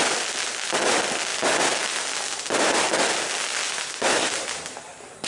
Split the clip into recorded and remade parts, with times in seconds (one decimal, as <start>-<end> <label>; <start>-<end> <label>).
0.0-5.3 recorded